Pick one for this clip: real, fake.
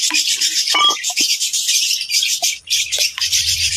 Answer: fake